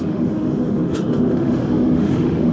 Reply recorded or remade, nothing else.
remade